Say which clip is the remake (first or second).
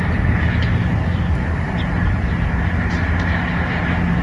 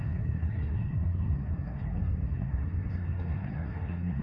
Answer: second